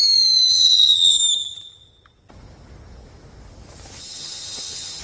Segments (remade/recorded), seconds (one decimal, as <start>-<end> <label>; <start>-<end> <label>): 0.0-0.5 recorded; 0.5-1.2 remade; 1.2-4.0 recorded; 4.0-5.0 remade